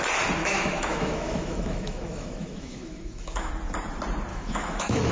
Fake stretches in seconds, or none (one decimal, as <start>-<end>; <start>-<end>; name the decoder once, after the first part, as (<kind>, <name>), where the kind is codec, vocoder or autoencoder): 0.4-3.5 (autoencoder, DAC-VAE); 4.3-5.1